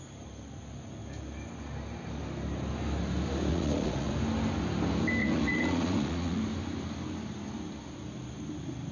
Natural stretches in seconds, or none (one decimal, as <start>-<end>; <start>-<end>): 0.0-3.5; 4.1-5.2; 6.4-8.9